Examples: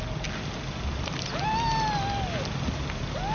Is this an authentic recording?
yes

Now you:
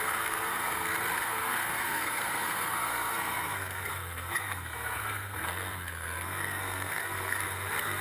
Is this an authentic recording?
no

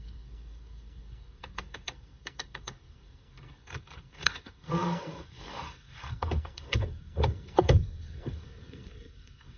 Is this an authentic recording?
no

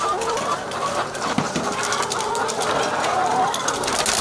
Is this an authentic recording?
yes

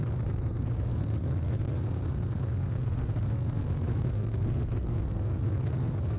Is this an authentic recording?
no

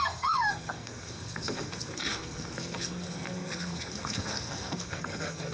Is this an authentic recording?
no